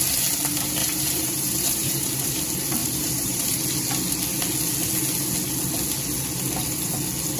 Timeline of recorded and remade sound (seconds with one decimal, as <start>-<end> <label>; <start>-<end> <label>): 0.0-0.8 recorded; 0.8-2.4 remade; 2.4-2.8 recorded; 2.8-3.6 remade; 3.6-7.4 recorded